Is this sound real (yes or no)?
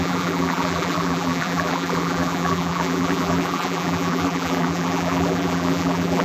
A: no